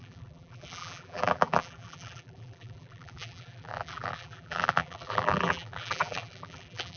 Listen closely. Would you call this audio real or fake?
fake